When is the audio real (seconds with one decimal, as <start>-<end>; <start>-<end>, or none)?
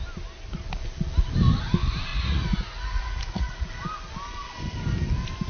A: 0.0-2.1; 3.7-5.5